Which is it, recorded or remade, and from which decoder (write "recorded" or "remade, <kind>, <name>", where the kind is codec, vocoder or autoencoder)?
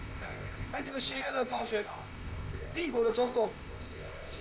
remade, codec, ZipCodec